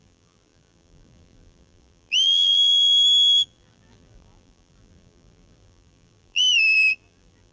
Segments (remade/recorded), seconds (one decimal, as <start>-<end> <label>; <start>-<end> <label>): 0.0-7.5 remade